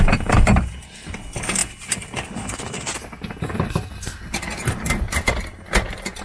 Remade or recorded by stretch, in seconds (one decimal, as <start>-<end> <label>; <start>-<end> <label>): 0.0-6.2 recorded